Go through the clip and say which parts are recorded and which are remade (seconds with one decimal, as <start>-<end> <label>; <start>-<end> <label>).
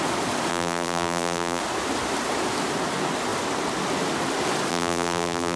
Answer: 0.0-0.5 recorded; 0.5-1.6 remade; 1.6-4.7 recorded; 4.7-5.6 remade